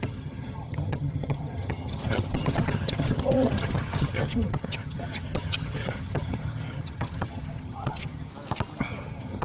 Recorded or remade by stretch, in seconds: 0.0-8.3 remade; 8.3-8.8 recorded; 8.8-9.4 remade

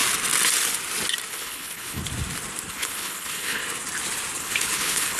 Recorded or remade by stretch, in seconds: 0.0-1.3 recorded; 1.3-2.0 remade; 2.0-2.7 recorded; 2.7-3.6 remade; 3.6-4.4 recorded; 4.4-5.2 remade

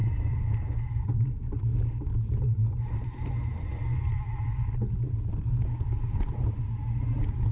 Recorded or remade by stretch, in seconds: 0.0-7.5 recorded

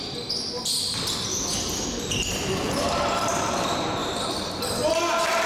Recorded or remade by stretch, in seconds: 0.0-2.6 recorded; 2.6-3.3 remade; 3.3-4.0 recorded; 4.0-5.0 remade; 5.0-5.5 recorded